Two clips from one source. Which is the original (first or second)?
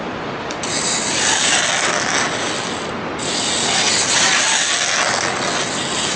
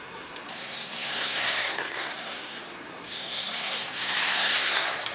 first